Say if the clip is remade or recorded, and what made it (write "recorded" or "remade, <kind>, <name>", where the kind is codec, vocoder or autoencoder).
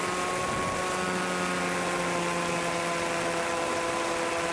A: recorded